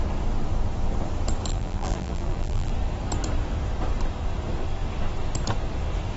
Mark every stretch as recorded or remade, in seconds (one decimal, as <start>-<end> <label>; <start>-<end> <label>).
0.0-1.5 recorded; 1.5-2.7 remade; 2.7-6.2 recorded